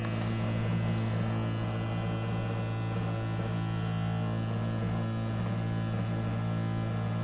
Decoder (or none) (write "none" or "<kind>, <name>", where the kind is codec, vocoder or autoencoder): none